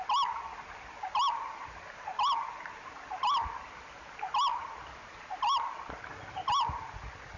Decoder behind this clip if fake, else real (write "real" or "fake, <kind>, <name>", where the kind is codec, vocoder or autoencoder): real